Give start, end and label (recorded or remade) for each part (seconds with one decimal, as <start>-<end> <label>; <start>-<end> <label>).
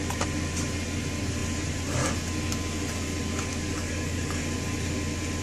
0.0-3.5 recorded; 3.5-4.4 remade; 4.4-5.4 recorded